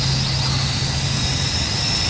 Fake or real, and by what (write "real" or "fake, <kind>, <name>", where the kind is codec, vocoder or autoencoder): real